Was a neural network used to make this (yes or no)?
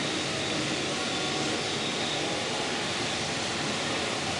no